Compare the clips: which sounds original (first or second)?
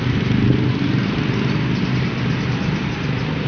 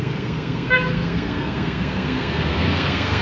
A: first